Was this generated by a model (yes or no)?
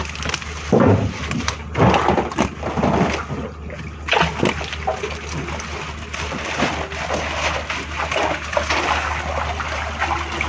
no